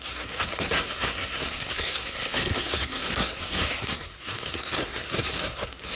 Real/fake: fake